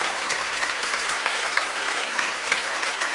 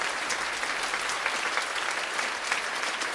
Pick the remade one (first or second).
first